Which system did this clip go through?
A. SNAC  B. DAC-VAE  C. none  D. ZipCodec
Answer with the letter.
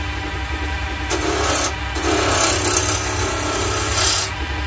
C